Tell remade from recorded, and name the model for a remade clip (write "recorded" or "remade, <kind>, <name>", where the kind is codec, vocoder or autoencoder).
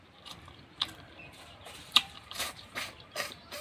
remade, vocoder, BigVGAN v2